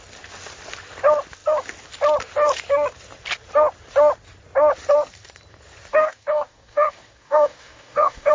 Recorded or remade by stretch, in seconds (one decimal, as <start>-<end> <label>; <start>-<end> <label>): 0.0-5.9 recorded; 5.9-8.3 remade